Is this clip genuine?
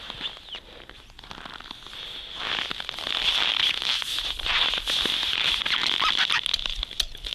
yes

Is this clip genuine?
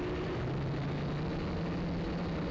yes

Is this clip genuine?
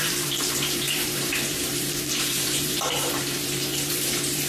no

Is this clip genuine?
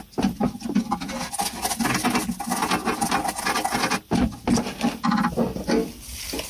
yes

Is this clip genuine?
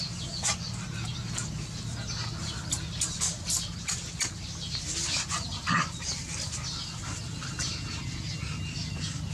yes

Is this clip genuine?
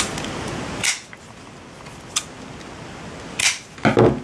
yes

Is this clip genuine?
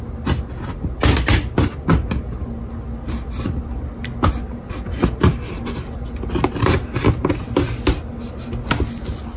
yes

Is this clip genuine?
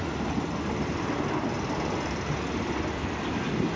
yes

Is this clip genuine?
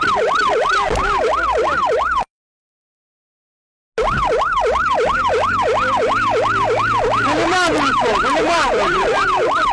yes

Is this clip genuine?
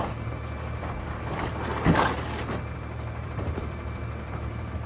no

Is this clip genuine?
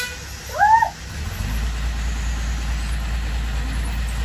yes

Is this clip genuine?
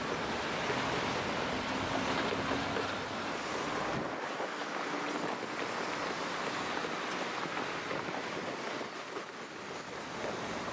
yes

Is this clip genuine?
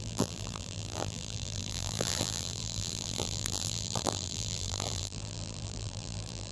no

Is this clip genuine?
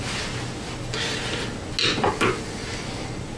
yes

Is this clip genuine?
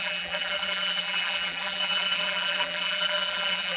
no